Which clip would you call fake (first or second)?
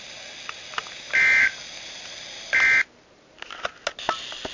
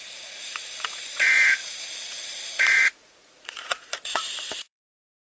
second